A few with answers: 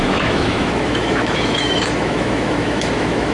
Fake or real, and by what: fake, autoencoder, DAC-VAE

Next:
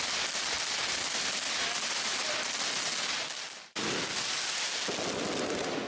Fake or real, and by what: real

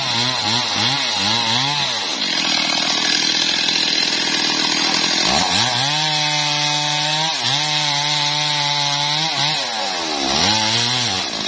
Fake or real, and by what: real